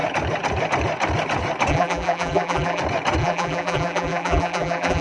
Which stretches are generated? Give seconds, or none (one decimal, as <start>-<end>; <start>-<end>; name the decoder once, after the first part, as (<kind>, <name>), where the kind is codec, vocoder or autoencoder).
1.7-2.8 (vocoder, BigVGAN v2); 3.2-5.0